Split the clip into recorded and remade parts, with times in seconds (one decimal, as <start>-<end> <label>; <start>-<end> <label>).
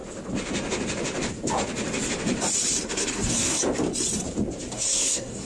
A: 0.0-2.9 recorded; 2.9-3.6 remade; 3.6-4.7 recorded; 4.7-5.4 remade